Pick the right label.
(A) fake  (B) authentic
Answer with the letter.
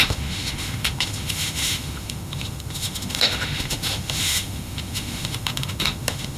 A